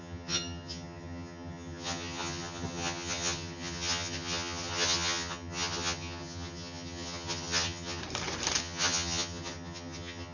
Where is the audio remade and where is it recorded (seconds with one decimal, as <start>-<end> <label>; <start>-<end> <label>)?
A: 0.0-8.0 remade; 8.0-8.6 recorded; 8.6-10.3 remade

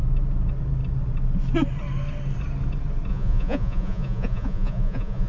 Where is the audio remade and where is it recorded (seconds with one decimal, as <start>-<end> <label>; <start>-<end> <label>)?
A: 0.0-3.1 recorded; 3.1-5.3 remade

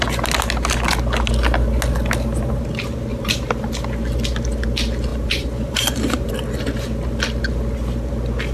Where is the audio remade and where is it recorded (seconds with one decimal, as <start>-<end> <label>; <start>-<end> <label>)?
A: 0.0-3.1 recorded; 3.1-3.7 remade; 3.7-5.1 recorded; 5.1-6.3 remade; 6.3-8.5 recorded

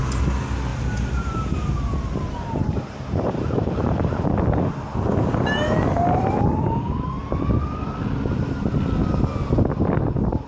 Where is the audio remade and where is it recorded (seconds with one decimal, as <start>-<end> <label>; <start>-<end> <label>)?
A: 0.0-0.7 recorded; 0.7-4.2 remade; 4.2-10.5 recorded

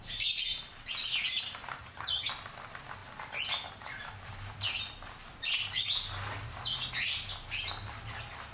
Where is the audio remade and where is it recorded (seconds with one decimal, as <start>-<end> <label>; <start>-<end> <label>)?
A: 0.0-1.8 recorded; 1.8-2.3 remade; 2.3-8.5 recorded